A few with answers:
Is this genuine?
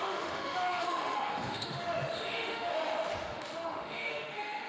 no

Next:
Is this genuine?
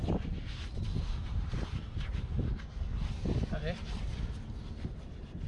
yes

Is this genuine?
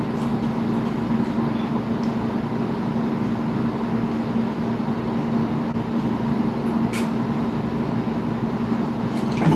yes